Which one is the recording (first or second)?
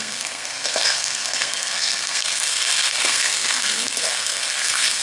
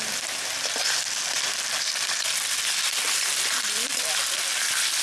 second